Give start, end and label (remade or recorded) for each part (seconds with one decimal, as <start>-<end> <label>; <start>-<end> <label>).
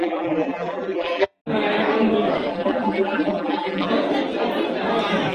0.0-1.4 remade; 1.4-2.5 recorded; 2.5-3.9 remade; 3.9-5.3 recorded